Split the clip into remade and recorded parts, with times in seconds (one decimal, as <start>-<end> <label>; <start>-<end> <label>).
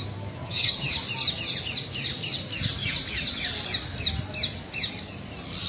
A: 0.0-0.4 recorded; 0.4-0.9 remade; 0.9-5.7 recorded